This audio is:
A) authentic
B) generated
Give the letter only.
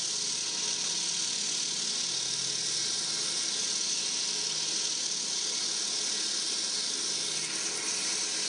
A